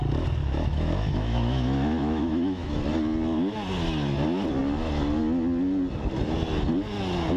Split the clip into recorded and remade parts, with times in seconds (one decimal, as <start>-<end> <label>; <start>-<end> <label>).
0.0-0.4 recorded; 0.4-2.8 remade; 2.8-7.4 recorded